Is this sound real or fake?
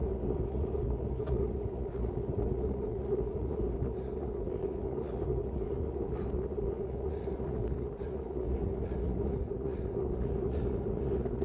fake